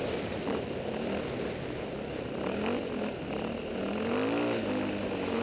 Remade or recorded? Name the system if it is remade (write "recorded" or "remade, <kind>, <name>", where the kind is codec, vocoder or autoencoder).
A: recorded